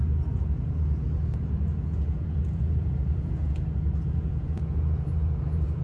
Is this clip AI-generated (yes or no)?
yes